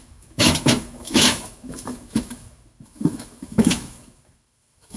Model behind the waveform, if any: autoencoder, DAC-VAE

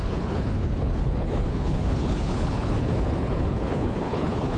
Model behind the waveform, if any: codec, HILCodec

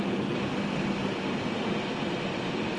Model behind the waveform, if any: none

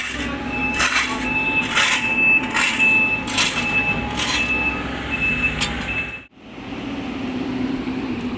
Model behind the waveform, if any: none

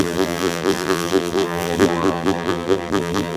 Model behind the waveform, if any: vocoder, BigVGAN v2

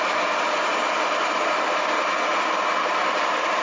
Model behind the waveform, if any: none